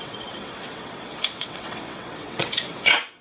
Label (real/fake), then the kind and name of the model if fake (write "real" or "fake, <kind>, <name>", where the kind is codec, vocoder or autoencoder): fake, vocoder, WaveNeXt